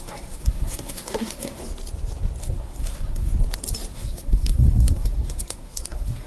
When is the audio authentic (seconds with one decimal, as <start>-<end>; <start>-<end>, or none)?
1.6-2.4; 3.3-3.9